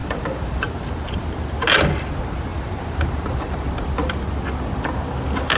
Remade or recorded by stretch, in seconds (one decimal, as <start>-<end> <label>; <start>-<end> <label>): 0.0-0.7 remade; 0.7-2.5 recorded; 2.5-3.7 remade; 3.7-5.6 recorded

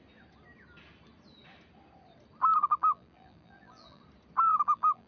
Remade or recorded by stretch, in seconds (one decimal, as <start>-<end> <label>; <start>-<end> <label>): 0.0-2.6 recorded; 2.6-4.0 remade; 4.0-4.5 recorded; 4.5-5.1 remade

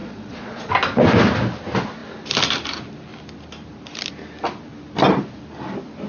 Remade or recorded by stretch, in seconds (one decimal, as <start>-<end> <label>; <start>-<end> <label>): 0.0-0.7 remade; 0.7-6.1 recorded

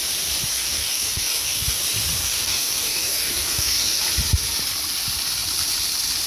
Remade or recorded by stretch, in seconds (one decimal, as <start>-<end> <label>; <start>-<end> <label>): 0.0-0.5 recorded; 0.5-1.8 remade; 1.8-2.2 recorded; 2.2-4.0 remade; 4.0-6.3 recorded